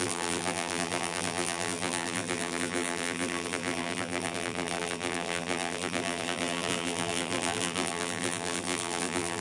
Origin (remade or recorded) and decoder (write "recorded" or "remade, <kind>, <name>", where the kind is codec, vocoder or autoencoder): remade, vocoder, BigVGAN v2